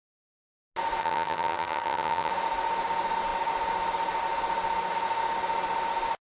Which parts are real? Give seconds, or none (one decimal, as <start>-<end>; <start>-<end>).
0.0-1.0; 2.3-6.4